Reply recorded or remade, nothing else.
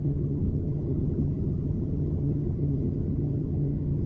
remade